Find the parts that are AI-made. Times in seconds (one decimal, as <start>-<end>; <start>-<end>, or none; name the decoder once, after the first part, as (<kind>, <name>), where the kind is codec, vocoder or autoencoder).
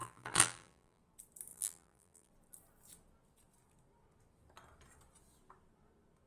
0.0-1.0 (vocoder, BigVGAN v2); 1.5-2.3